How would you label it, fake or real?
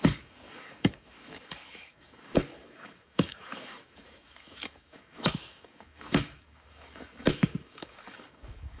fake